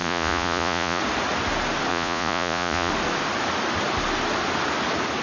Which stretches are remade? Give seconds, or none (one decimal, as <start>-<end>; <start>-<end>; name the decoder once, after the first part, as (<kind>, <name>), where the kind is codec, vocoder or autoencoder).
0.0-1.0 (vocoder, Vocos); 1.9-2.9